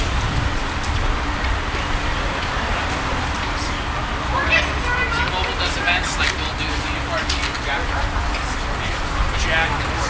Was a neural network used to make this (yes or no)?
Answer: no